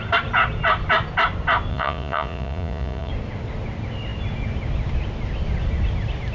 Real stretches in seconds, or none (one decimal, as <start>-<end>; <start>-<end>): 0.0-1.7; 3.1-6.3